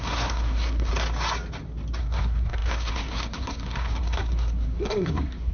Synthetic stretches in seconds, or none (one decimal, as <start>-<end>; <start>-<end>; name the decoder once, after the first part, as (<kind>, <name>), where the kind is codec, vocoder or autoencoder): 0.0-0.9 (codec, SNAC); 2.0-5.5